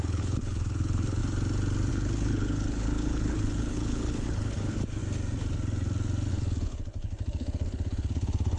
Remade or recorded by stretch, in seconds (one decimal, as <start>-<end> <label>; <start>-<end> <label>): 0.0-1.2 remade; 1.2-1.9 recorded; 1.9-5.0 remade; 5.0-6.3 recorded; 6.3-8.6 remade